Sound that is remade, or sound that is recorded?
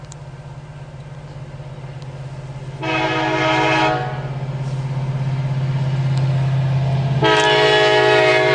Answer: recorded